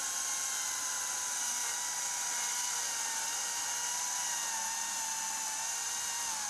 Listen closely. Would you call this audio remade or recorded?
recorded